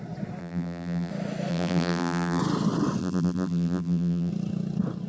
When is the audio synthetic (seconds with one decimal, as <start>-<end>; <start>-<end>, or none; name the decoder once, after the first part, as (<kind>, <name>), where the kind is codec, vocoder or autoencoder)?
0.4-1.1 (vocoder, BigVGAN v2); 1.5-2.4; 3.0-4.3